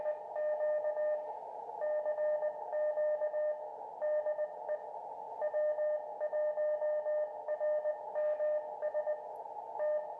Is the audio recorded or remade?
recorded